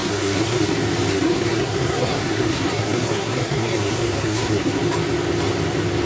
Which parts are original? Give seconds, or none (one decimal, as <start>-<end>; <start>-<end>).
0.7-1.1; 4.8-6.1